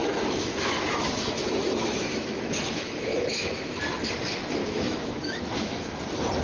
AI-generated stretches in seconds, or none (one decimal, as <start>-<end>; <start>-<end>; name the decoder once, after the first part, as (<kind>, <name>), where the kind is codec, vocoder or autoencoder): 0.0-3.8 (autoencoder, DAC-VAE); 4.6-6.0